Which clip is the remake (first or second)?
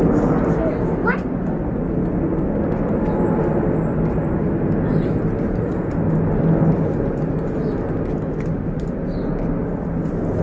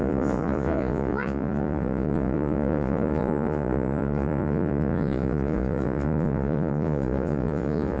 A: second